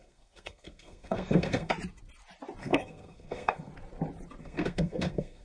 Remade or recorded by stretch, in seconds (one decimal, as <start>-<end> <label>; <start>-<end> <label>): 0.0-1.7 remade; 1.7-2.6 recorded; 2.6-3.7 remade; 3.7-4.4 recorded; 4.4-5.4 remade